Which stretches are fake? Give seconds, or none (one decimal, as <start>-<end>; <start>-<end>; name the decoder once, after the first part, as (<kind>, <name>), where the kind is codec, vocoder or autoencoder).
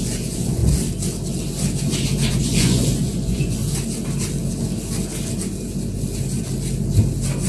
0.0-0.6 (vocoder, Vocos); 2.3-3.6